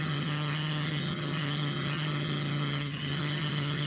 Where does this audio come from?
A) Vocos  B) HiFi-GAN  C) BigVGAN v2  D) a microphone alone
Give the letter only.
B